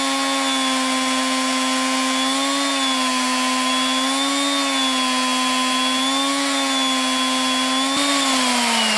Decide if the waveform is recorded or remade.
recorded